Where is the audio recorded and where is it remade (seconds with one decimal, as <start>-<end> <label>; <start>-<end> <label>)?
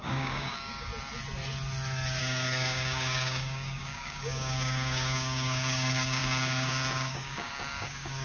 0.0-0.9 remade; 0.9-2.2 recorded; 2.2-8.2 remade